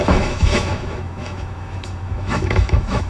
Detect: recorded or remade remade